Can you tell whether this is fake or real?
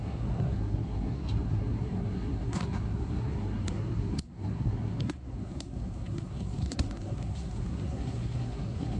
fake